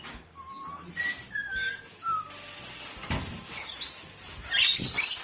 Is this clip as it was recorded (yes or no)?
yes